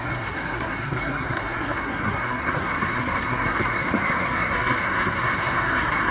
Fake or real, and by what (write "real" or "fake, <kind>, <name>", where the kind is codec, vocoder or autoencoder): fake, codec, SNAC